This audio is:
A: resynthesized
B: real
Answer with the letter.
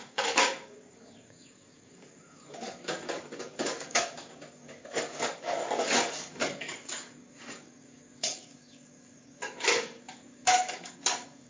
A